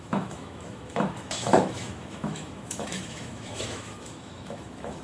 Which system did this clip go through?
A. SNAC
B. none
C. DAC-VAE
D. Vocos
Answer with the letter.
C